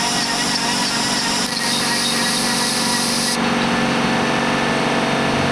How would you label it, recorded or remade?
recorded